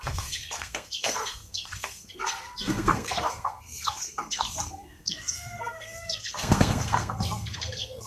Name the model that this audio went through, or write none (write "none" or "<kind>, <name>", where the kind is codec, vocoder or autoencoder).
codec, SNAC